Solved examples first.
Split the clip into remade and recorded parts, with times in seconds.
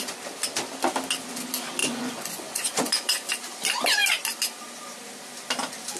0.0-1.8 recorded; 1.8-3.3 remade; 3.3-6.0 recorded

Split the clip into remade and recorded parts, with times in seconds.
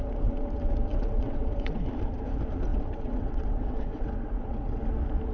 0.0-0.9 recorded; 0.9-1.8 remade; 1.8-2.7 recorded; 2.7-4.8 remade; 4.8-5.3 recorded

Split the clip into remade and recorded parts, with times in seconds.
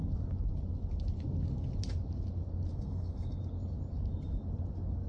0.0-2.7 recorded; 2.7-3.4 remade; 3.4-5.1 recorded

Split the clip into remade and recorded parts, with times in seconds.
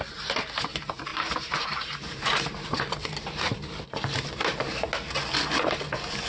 0.0-1.1 recorded; 1.1-4.9 remade; 4.9-6.3 recorded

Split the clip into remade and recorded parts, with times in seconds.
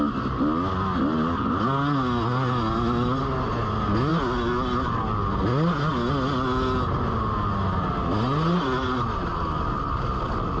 0.0-10.6 recorded